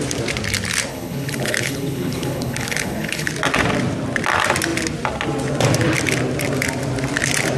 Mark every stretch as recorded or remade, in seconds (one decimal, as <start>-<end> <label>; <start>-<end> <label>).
0.0-0.9 recorded; 0.9-3.3 remade; 3.3-7.6 recorded